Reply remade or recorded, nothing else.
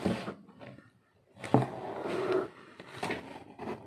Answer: recorded